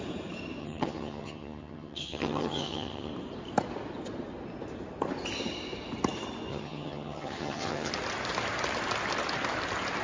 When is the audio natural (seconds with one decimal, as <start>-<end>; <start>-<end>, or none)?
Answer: 0.0-0.6; 3.1-6.5; 7.9-10.0